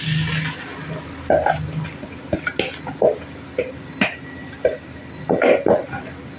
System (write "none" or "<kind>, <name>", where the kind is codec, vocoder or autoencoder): none